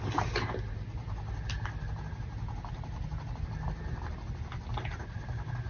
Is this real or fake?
real